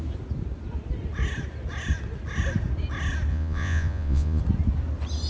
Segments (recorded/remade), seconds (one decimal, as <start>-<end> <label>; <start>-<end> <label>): 0.0-3.3 recorded; 3.3-4.4 remade; 4.4-5.3 recorded

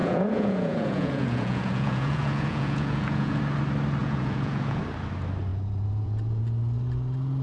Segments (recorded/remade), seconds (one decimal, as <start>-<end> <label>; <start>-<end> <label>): 0.0-3.4 remade; 3.4-4.0 recorded; 4.0-4.8 remade; 4.8-5.5 recorded; 5.5-6.4 remade; 6.4-7.4 recorded

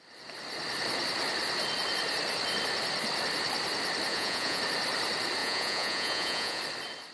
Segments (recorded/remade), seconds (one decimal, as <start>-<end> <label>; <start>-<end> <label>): 0.0-4.1 recorded; 4.1-4.6 remade; 4.6-5.4 recorded; 5.4-6.6 remade; 6.6-7.1 recorded

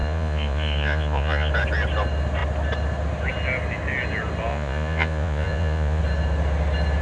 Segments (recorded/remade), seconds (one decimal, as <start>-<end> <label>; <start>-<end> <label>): 0.0-1.5 remade; 1.5-4.5 recorded; 4.5-6.0 remade; 6.0-7.0 recorded

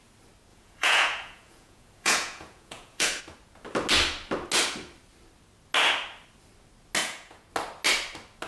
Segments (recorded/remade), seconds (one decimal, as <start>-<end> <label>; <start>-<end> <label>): 0.0-0.5 recorded; 0.5-3.2 remade; 3.2-7.0 recorded; 7.0-7.5 remade; 7.5-8.5 recorded